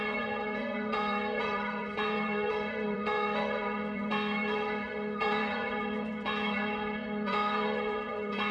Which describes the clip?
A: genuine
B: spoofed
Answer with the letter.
B